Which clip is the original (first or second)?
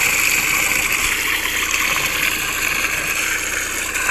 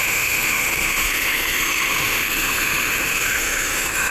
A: first